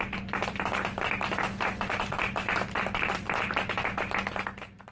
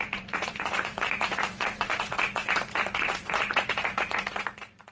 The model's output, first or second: second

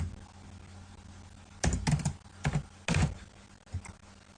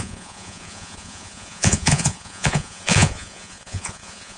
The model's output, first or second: second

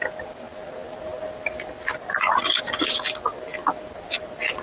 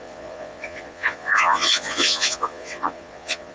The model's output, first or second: second